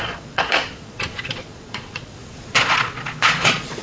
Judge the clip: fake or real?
fake